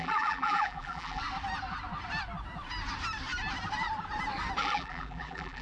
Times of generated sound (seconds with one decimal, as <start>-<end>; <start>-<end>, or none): 0.0-1.2; 4.6-5.6